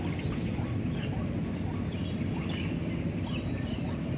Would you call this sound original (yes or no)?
yes